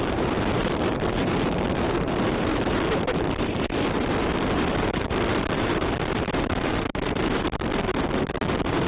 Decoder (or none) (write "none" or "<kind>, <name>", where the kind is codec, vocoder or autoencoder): vocoder, BigVGAN v2